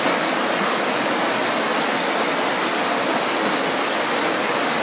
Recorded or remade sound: recorded